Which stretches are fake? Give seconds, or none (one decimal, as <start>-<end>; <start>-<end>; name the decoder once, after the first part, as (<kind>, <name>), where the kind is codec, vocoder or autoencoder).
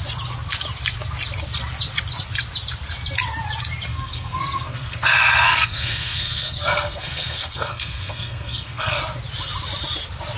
3.9-9.0 (codec, SNAC)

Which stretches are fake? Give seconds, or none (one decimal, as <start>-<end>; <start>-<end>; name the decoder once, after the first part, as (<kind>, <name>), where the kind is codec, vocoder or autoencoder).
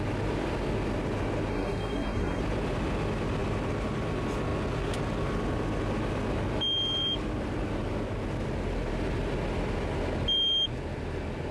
1.5-2.4 (codec, SNAC)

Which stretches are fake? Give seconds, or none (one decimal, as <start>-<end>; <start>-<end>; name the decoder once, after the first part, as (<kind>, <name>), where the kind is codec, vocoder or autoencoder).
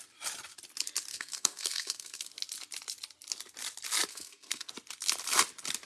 1.1-2.3 (codec, SNAC); 4.1-4.7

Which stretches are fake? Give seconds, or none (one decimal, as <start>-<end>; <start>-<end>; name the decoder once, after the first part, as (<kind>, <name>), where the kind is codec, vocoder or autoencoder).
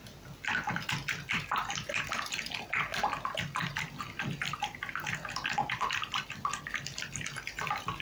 none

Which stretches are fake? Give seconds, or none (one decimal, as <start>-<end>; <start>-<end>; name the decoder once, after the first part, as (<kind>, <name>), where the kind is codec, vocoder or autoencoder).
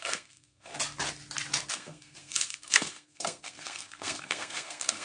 0.0-0.7 (codec, SNAC); 1.7-5.0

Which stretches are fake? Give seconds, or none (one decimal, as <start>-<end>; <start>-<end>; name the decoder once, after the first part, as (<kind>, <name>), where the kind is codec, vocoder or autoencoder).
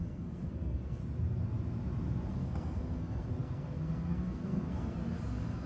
0.0-1.0 (codec, SNAC); 2.3-5.0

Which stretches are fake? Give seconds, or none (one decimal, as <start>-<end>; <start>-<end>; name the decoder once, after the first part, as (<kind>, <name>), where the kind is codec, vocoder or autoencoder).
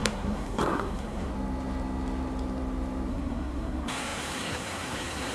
0.0-1.3 (codec, SNAC); 3.1-5.3